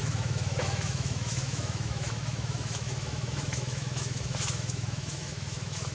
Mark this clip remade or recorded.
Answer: remade